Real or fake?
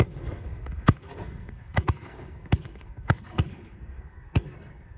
fake